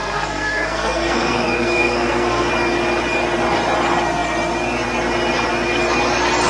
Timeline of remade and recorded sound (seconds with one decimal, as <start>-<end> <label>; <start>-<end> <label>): 0.0-2.5 remade; 2.5-6.5 recorded